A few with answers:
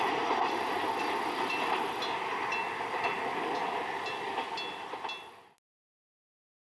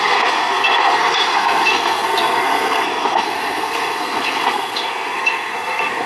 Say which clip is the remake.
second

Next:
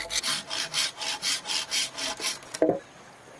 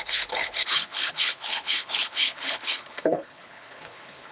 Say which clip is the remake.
second